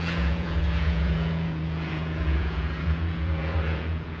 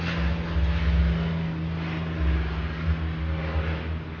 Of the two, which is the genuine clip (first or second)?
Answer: second